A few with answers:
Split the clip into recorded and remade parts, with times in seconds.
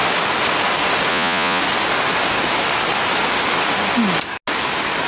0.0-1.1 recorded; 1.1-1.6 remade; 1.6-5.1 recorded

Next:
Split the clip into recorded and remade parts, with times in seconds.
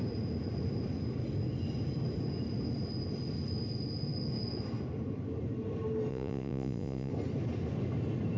0.0-6.1 recorded; 6.1-7.1 remade; 7.1-8.4 recorded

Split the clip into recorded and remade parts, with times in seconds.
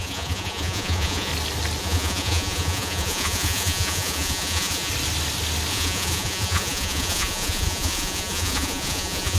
0.0-1.3 remade; 1.3-1.8 recorded; 1.8-4.9 remade; 4.9-5.7 recorded; 5.7-9.4 remade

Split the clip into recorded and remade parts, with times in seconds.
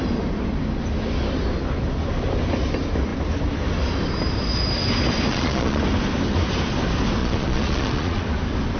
0.0-5.3 recorded; 5.3-5.8 remade; 5.8-7.2 recorded; 7.2-8.2 remade; 8.2-8.8 recorded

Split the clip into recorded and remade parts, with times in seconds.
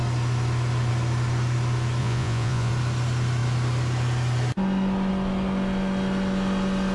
0.0-2.0 recorded; 2.0-2.7 remade; 2.7-6.9 recorded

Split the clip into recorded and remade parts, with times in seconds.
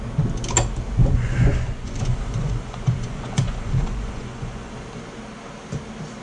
0.0-1.0 recorded; 1.0-4.7 remade; 4.7-6.2 recorded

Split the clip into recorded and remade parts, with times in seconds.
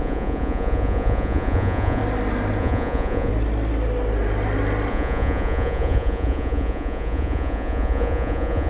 0.0-2.0 remade; 2.0-2.6 recorded; 2.6-3.3 remade; 3.3-4.9 recorded; 4.9-8.7 remade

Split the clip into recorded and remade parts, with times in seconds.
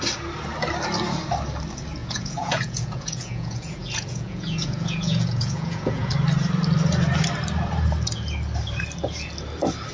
0.0-2.0 recorded; 2.0-6.1 remade; 6.1-9.9 recorded